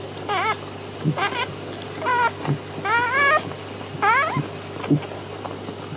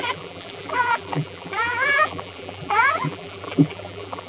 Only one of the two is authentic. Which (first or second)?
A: first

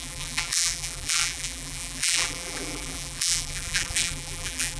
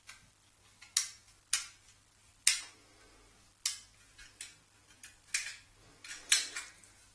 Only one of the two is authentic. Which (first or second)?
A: second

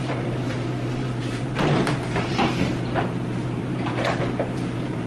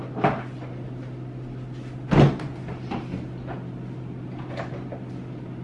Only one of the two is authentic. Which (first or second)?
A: second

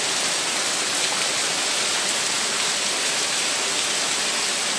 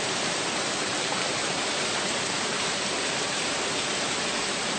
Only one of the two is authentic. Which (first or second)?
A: first